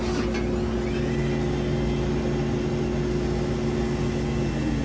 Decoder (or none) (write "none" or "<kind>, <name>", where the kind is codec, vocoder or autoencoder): none